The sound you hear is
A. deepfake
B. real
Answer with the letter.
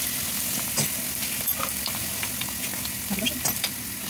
B